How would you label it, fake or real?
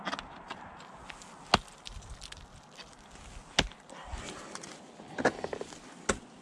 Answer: real